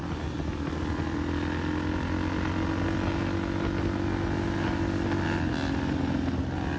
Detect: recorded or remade recorded